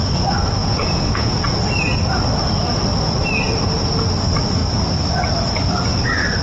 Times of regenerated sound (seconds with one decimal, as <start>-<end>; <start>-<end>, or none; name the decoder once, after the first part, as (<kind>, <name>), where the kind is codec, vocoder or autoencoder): 0.6-1.3 (vocoder, Vocos)